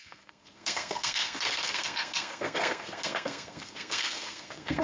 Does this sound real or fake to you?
fake